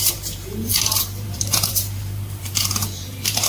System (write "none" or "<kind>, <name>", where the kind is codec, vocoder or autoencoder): vocoder, BigVGAN v2